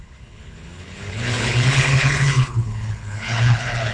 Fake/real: fake